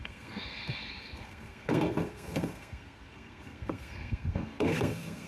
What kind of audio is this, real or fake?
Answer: fake